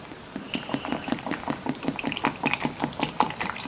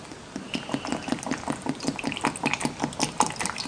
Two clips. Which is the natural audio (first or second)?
second